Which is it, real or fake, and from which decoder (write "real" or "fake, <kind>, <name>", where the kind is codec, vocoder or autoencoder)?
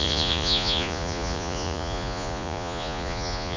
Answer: fake, vocoder, Vocos